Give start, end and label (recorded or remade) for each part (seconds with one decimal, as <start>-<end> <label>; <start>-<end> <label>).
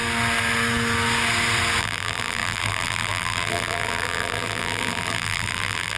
0.0-1.8 recorded; 1.8-6.0 remade